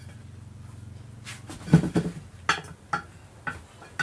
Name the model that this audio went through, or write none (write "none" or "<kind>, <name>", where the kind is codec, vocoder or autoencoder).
none